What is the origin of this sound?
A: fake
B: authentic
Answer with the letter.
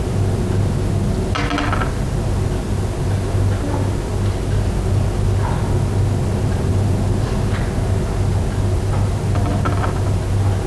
B